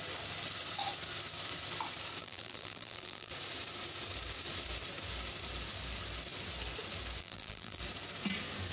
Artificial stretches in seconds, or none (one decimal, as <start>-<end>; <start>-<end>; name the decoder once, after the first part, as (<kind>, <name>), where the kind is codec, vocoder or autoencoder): 2.2-3.3 (vocoder, BigVGAN v2); 7.2-7.8